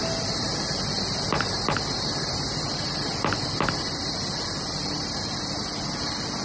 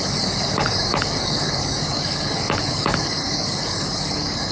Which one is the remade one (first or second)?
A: second